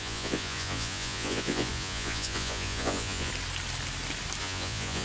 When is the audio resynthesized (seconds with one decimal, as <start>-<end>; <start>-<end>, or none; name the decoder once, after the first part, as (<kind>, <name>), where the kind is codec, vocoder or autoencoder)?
0.0-3.3 (vocoder, Vocos); 4.4-5.0